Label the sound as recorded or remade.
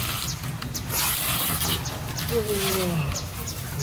recorded